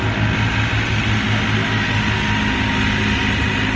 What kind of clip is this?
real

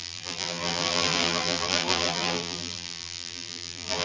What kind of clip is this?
fake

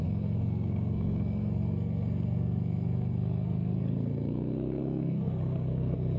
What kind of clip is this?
fake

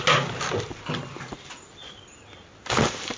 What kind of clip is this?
real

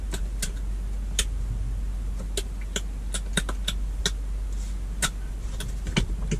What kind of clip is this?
real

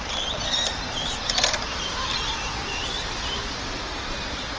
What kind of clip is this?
fake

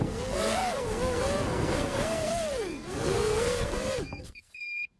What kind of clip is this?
fake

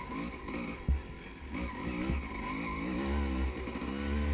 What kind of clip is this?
real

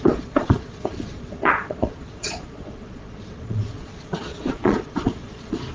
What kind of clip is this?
fake